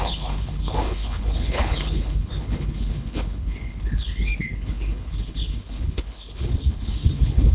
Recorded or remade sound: remade